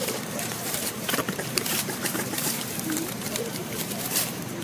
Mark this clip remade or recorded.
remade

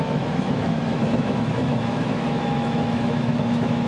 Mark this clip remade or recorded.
remade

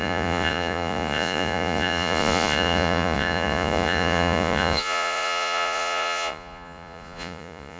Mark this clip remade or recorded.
remade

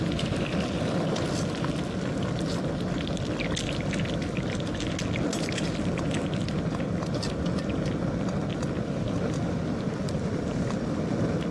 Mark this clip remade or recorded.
recorded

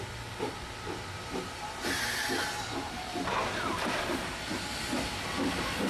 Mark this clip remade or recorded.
recorded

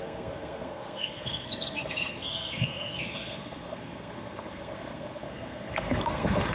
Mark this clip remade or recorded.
remade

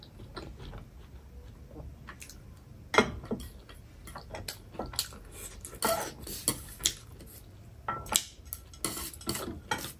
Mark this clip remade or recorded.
recorded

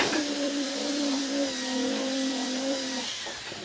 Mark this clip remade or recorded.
remade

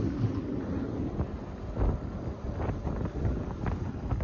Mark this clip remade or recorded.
recorded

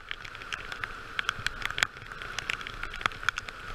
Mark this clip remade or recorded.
recorded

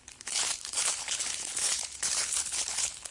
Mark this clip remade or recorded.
remade